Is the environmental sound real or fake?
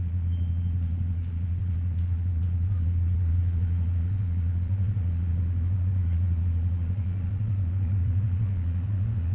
fake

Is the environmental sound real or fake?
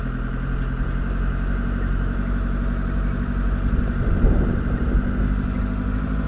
real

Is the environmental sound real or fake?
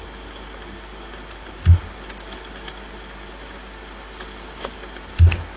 real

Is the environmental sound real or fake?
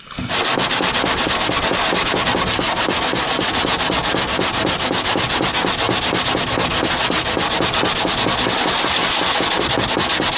real